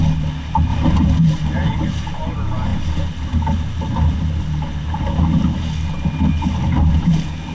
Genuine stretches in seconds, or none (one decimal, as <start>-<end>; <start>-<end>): 0.0-7.5